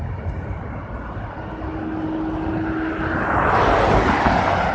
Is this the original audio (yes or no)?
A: yes